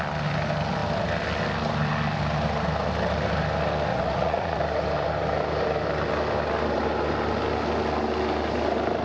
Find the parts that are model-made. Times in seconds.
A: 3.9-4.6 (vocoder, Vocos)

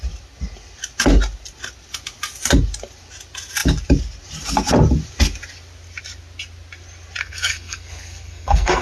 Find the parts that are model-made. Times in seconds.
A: 7.2-8.8 (codec, SNAC)

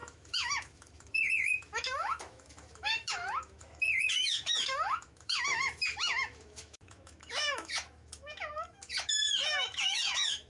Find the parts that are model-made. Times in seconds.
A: 0.0-10.5 (autoencoder, DAC-VAE)

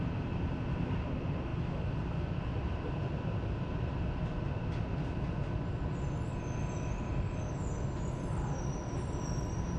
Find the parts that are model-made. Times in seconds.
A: none